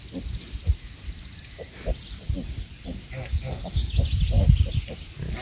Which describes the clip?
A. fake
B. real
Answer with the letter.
B